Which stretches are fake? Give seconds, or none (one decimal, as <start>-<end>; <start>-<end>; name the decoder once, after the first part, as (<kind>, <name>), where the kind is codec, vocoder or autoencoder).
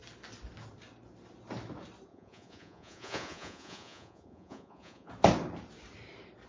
2.1-5.1 (vocoder, Vocos)